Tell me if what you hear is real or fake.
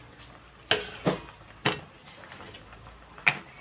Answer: real